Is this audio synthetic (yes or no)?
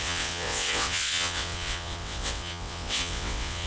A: yes